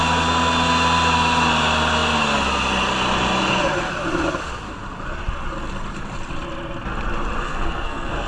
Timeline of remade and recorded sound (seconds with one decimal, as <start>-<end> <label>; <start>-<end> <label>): 0.0-7.4 recorded; 7.4-8.3 remade